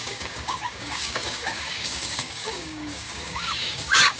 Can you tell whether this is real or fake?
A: fake